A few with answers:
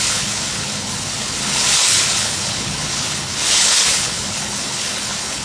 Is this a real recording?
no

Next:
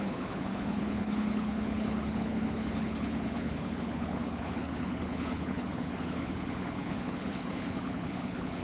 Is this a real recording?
no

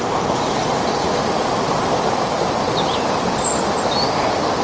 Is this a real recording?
yes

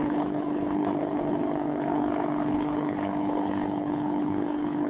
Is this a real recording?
no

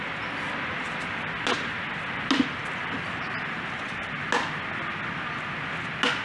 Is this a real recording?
yes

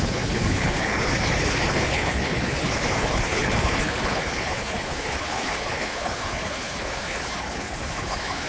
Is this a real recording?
no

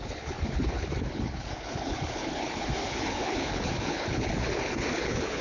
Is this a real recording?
no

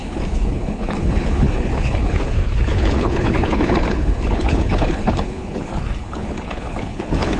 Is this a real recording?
no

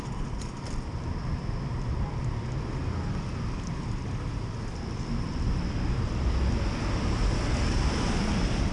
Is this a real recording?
yes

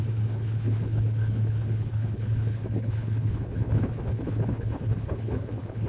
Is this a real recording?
no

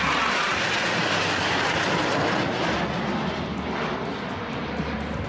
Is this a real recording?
yes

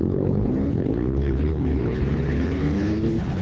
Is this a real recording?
no